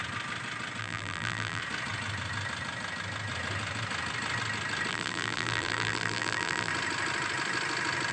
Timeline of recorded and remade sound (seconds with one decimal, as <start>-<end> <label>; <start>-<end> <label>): 0.0-0.8 recorded; 0.8-1.6 remade; 1.6-4.9 recorded; 4.9-6.7 remade; 6.7-8.1 recorded